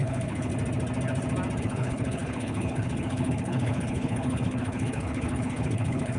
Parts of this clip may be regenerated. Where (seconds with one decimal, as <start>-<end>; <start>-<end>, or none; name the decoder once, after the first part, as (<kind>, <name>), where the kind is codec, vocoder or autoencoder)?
0.0-0.5 (codec, HILCodec); 1.6-6.2